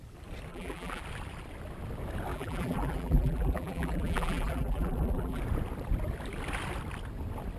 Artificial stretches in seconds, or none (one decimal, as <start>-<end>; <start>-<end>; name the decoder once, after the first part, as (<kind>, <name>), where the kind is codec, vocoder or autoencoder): 0.5-1.0 (vocoder, BigVGAN v2); 2.3-5.4